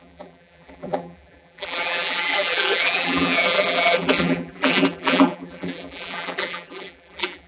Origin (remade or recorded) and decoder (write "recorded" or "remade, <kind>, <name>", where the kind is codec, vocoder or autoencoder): remade, vocoder, BigVGAN v2